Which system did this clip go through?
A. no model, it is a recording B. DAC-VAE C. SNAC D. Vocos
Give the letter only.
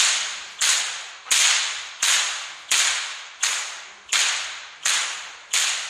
A